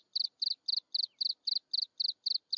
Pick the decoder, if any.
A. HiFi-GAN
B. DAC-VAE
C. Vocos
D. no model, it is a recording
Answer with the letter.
D